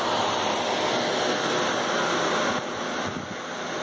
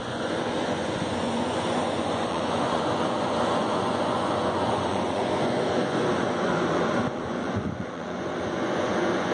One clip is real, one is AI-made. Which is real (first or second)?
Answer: first